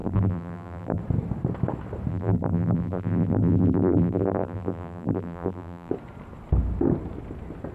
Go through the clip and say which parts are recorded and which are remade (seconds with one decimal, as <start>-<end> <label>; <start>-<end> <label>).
0.0-1.0 remade; 1.0-2.1 recorded; 2.1-5.9 remade; 5.9-7.7 recorded